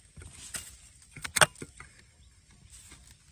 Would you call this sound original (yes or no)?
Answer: yes